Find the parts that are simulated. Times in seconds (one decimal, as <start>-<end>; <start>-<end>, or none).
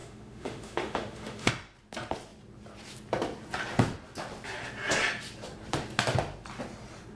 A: 0.0-1.5